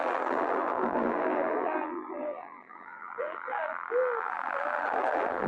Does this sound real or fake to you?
fake